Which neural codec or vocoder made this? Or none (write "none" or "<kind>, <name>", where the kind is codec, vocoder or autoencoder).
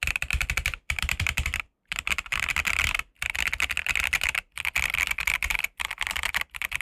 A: vocoder, BigVGAN v2